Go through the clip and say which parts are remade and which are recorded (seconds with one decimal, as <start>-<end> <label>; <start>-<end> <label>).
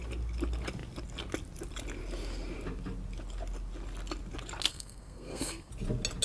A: 0.0-4.7 recorded; 4.7-5.7 remade; 5.7-6.2 recorded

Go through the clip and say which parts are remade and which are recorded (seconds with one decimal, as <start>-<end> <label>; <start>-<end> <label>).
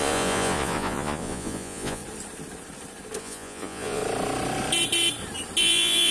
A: 0.0-2.0 remade; 2.0-3.2 recorded; 3.2-4.0 remade; 4.0-5.6 recorded; 5.6-6.1 remade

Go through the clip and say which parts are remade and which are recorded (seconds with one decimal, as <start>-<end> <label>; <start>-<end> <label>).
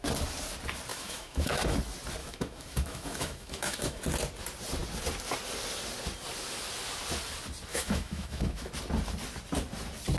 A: 0.0-0.9 recorded; 0.9-1.8 remade; 1.8-2.2 recorded; 2.2-4.0 remade; 4.0-7.7 recorded; 7.7-8.7 remade; 8.7-10.2 recorded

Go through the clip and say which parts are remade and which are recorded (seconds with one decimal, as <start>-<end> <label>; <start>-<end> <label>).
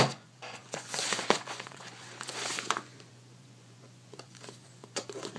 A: 0.0-5.4 remade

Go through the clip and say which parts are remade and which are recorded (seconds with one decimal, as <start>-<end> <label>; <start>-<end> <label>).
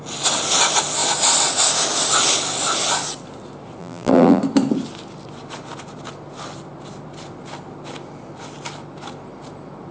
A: 0.0-3.8 recorded; 3.8-4.4 remade; 4.4-9.9 recorded